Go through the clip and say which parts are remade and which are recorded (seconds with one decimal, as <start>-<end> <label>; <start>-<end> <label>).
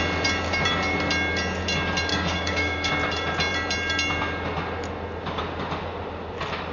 0.0-2.1 recorded; 2.1-2.9 remade; 2.9-6.7 recorded